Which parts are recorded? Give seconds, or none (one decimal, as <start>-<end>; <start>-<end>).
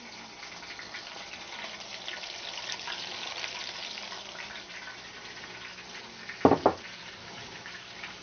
0.0-7.0